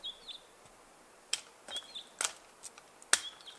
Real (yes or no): yes